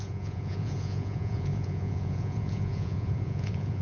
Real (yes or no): no